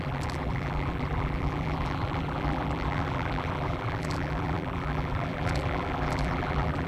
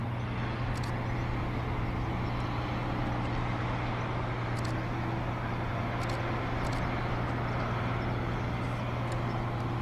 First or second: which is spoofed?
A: first